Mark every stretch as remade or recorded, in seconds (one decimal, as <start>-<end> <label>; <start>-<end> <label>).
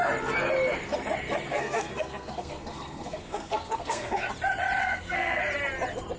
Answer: 0.0-1.5 recorded; 1.5-4.3 remade; 4.3-4.8 recorded; 4.8-5.4 remade; 5.4-6.2 recorded